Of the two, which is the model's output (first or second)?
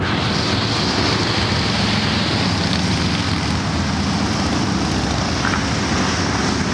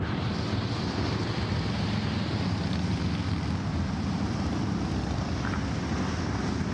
second